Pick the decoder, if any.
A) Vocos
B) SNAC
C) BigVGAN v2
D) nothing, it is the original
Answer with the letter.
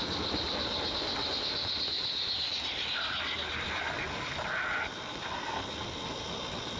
D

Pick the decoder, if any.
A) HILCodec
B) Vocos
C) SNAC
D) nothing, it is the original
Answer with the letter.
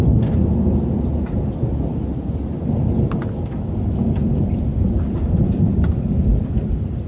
D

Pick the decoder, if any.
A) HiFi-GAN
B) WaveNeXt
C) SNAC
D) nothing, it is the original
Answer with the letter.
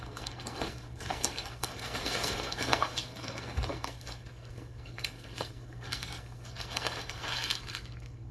C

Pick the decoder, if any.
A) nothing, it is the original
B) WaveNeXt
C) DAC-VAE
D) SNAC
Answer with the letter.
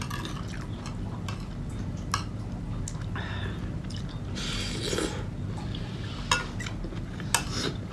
A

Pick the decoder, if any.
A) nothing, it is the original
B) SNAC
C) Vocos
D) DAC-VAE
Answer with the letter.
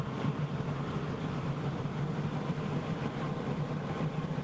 A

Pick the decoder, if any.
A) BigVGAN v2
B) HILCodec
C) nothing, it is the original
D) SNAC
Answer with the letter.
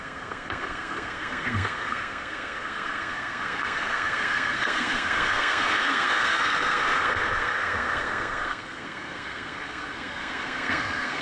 D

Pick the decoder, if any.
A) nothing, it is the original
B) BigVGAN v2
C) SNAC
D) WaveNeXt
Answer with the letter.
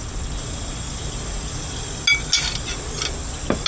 A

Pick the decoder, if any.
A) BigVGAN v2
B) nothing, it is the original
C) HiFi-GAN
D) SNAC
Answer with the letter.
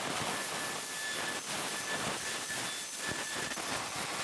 B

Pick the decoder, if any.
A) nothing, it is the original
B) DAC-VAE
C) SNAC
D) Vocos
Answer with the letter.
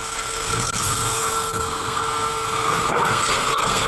C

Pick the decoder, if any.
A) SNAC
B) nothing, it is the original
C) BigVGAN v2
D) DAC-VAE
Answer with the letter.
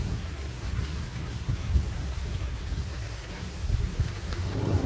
A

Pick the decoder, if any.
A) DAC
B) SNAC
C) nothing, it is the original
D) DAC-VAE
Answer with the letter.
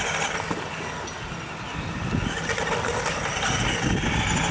C